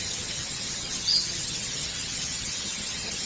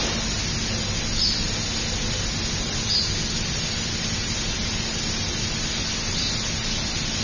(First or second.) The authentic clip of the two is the second